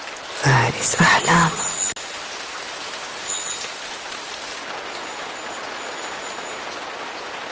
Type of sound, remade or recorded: recorded